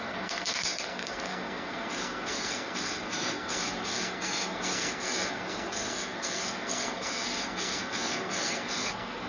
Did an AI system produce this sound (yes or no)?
yes